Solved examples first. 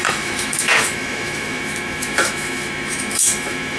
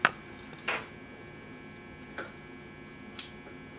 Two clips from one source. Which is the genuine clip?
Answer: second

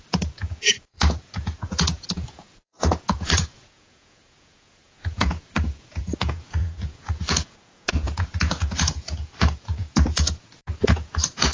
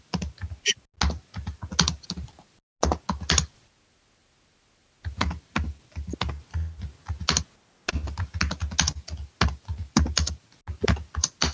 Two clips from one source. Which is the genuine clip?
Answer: second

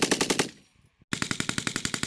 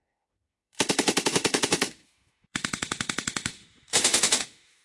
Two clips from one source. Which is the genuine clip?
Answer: first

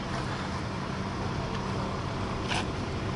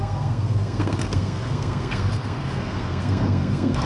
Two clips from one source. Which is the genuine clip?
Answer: first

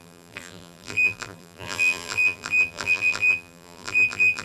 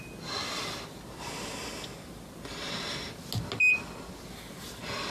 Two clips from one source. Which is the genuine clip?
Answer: second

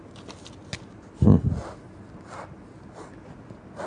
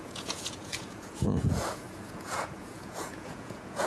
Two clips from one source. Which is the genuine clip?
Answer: first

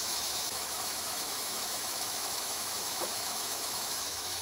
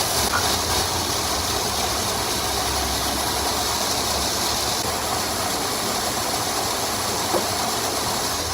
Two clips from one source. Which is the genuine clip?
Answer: second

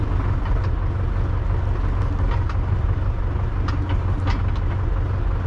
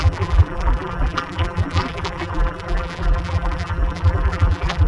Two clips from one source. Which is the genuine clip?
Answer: first